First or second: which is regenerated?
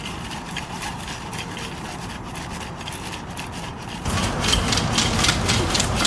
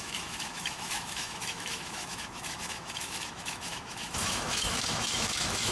second